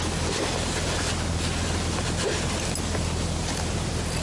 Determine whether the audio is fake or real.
real